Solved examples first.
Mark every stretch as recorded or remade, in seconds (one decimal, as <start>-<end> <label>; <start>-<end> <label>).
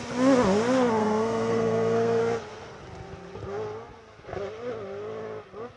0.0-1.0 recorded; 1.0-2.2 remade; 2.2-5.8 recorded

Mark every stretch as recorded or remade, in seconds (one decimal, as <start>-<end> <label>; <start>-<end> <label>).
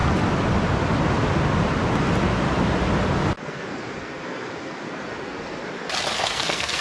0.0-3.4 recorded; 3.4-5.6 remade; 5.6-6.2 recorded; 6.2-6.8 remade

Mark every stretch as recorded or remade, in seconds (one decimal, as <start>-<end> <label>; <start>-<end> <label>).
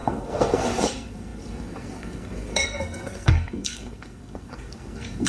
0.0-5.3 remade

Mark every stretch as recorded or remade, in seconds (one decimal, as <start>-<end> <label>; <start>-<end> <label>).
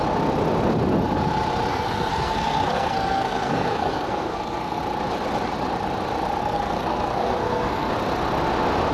0.0-1.7 recorded; 1.7-4.8 remade; 4.8-6.4 recorded; 6.4-7.9 remade; 7.9-8.9 recorded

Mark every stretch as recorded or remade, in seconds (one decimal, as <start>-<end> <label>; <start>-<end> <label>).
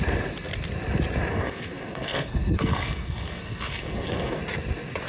0.0-1.3 recorded; 1.3-4.4 remade; 4.4-5.1 recorded